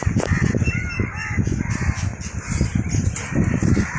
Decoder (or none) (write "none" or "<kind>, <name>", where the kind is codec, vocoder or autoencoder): none